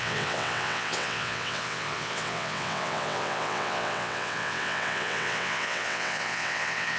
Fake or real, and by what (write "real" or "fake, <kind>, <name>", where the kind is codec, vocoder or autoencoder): fake, vocoder, WaveNeXt